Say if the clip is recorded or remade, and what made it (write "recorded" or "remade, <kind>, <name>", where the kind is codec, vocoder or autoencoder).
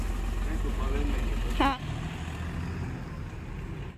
recorded